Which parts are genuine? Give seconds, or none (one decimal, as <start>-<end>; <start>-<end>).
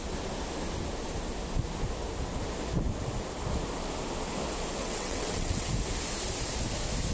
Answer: 0.0-4.8; 5.7-7.1